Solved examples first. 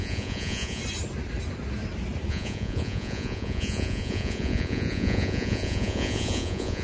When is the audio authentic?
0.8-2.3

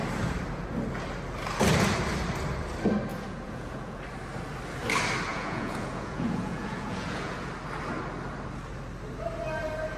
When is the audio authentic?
0.0-3.1; 4.0-5.3; 7.5-10.0

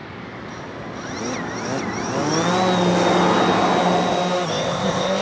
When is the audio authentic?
0.0-4.5

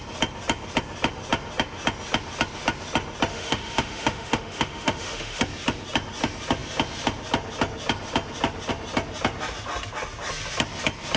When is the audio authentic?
0.0-3.3; 5.4-11.2

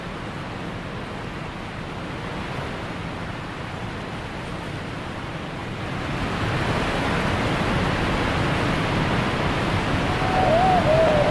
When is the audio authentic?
0.0-11.3

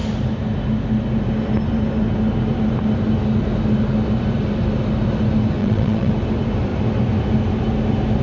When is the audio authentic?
0.0-5.6; 6.1-8.2

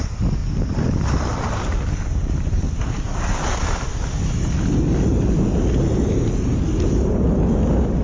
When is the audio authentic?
0.0-8.0